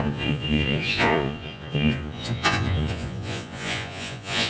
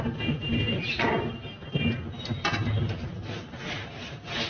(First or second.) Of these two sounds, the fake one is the first